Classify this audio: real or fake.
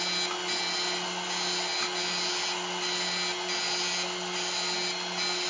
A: real